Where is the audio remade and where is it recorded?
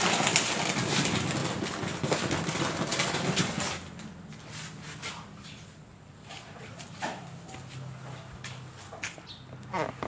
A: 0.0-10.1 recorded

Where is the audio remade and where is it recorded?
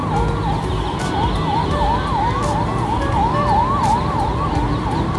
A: 0.0-5.2 recorded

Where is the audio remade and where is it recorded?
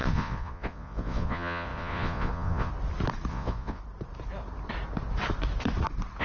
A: 0.0-2.7 remade; 2.7-3.3 recorded; 3.3-3.8 remade; 3.8-6.2 recorded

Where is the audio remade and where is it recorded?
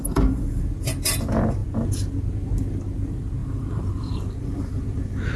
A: 0.0-0.5 remade; 0.5-3.4 recorded; 3.4-4.1 remade; 4.1-5.4 recorded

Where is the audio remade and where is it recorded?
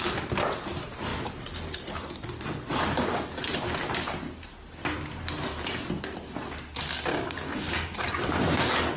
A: 0.0-7.1 recorded; 7.1-8.2 remade; 8.2-9.0 recorded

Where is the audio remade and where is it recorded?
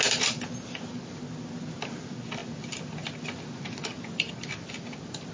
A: 0.0-5.3 recorded